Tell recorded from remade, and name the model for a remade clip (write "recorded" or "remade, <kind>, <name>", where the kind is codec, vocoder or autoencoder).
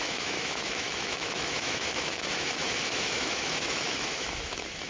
remade, autoencoder, DAC-VAE